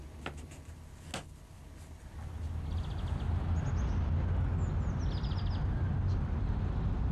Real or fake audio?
real